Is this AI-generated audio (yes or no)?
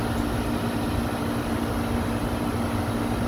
no